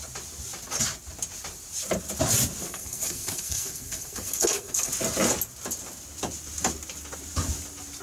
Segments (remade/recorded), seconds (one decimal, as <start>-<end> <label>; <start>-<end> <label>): 0.0-2.6 recorded; 2.6-4.9 remade; 4.9-8.0 recorded